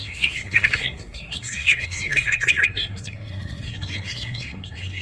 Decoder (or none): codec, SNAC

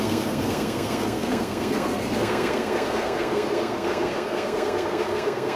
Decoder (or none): codec, SNAC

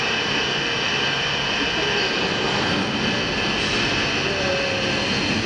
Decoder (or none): none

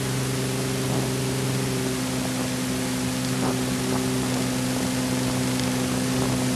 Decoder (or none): none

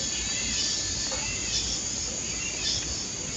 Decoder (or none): none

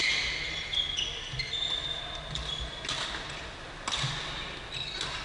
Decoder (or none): none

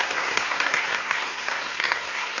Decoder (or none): codec, SNAC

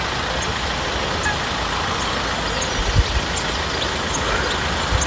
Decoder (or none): none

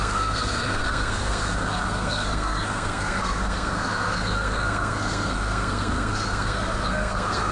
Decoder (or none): codec, SNAC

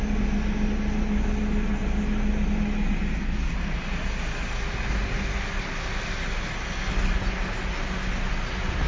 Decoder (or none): none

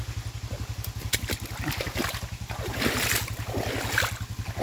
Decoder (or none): none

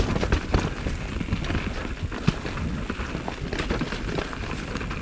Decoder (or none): none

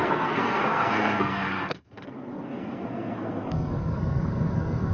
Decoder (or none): codec, SNAC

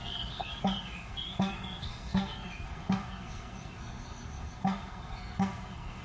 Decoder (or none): codec, SNAC